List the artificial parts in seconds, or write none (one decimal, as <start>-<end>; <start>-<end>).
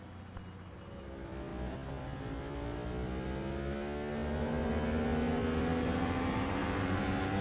5.7-7.0